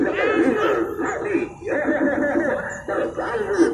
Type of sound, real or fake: real